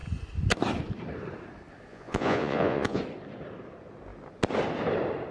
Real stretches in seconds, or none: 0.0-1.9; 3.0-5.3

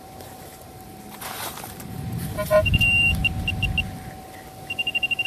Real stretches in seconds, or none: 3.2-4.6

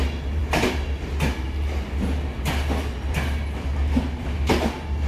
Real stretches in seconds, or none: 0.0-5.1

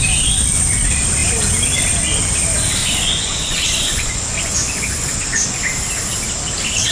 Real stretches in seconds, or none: 0.0-2.8; 5.6-6.9

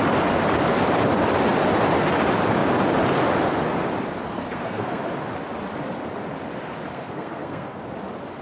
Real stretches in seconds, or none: 0.0-4.3; 5.0-6.9; 7.8-8.4

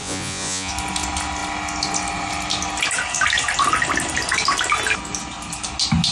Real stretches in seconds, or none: 0.7-6.1